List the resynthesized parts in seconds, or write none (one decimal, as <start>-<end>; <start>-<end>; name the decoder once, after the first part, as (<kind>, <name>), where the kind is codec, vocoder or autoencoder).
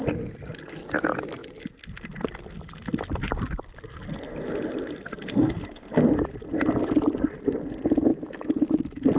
8.1-8.7 (autoencoder, DAC-VAE)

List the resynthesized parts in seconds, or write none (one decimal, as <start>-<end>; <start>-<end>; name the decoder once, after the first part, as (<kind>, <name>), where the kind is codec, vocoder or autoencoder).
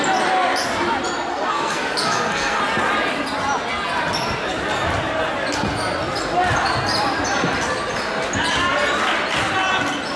1.3-2.6 (codec, SNAC)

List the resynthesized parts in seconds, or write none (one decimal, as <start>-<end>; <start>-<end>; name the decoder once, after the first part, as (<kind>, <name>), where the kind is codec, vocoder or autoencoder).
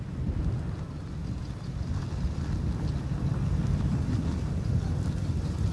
1.2-4.5 (vocoder, BigVGAN v2)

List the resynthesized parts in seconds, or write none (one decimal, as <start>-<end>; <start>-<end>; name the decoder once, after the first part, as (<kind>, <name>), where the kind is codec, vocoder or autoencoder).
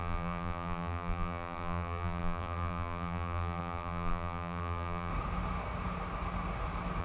0.0-5.1 (vocoder, BigVGAN v2)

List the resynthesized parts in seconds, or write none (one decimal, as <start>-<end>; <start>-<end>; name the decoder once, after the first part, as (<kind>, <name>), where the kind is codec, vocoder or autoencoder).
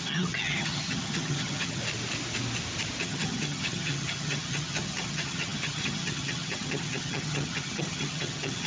0.0-1.8 (vocoder, HiFi-GAN); 3.0-8.7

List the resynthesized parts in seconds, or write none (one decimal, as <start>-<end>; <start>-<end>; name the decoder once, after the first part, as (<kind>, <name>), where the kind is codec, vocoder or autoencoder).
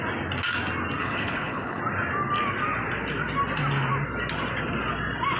1.0-1.8 (codec, HILCodec)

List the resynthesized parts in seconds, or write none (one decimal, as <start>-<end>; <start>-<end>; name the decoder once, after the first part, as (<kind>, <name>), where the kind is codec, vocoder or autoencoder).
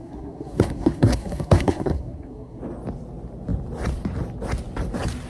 0.0-2.6 (codec, SNAC)